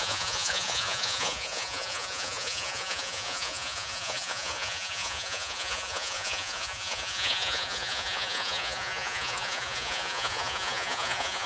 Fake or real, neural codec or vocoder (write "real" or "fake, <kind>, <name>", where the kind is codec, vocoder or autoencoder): fake, vocoder, Vocos